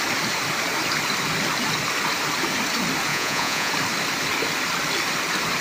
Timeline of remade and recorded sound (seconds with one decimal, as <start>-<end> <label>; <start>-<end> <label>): 0.0-3.1 recorded; 3.1-3.7 remade; 3.7-5.6 recorded